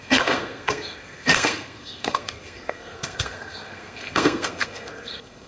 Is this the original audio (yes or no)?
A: no